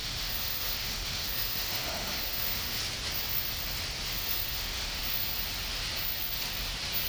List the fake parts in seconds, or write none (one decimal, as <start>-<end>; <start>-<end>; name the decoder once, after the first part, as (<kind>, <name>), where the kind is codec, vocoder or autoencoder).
0.0-2.8 (autoencoder, DAC-VAE); 4.1-5.0